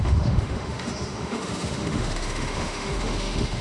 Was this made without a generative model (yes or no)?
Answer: no